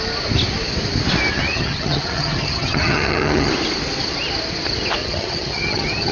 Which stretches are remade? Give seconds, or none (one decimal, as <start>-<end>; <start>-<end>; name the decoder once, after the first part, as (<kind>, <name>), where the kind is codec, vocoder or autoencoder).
1.3-3.5 (vocoder, HiFi-GAN); 5.0-6.1